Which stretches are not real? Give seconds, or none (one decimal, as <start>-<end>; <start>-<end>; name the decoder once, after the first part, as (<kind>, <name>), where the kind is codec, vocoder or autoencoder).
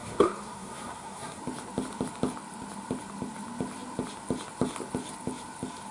0.0-1.4 (codec, SNAC)